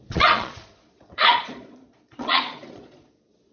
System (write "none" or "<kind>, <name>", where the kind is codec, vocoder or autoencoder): vocoder, Vocos